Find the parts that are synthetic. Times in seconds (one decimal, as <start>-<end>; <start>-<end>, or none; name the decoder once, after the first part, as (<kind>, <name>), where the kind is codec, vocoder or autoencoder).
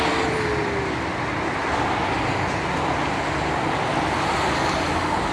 none